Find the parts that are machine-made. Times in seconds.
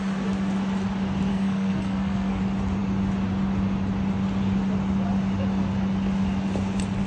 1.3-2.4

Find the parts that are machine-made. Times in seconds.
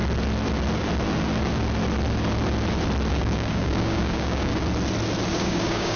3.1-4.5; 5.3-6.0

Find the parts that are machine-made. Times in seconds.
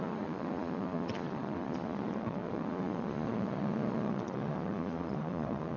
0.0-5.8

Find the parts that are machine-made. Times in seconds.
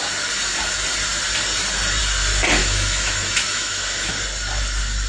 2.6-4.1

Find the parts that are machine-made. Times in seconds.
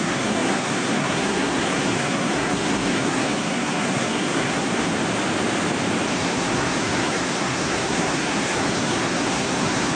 0.0-4.9; 6.1-9.9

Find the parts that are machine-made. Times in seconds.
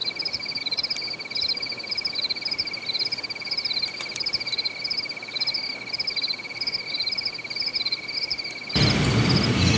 0.0-0.6; 7.7-8.5